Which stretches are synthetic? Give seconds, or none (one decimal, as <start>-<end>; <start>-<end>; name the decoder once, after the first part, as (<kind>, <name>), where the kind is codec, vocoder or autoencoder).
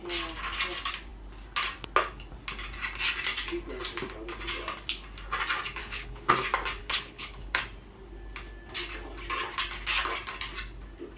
5.8-6.3 (codec, HILCodec); 6.8-7.6